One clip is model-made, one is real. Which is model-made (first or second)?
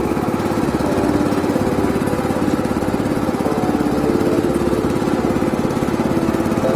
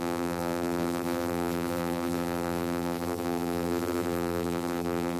second